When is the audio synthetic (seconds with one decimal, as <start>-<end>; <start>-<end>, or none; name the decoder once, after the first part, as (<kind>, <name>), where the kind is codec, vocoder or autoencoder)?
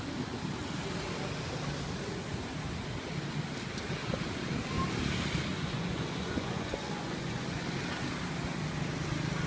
5.5-7.6 (vocoder, Vocos)